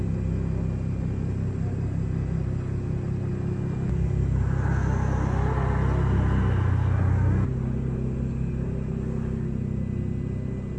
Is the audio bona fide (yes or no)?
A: yes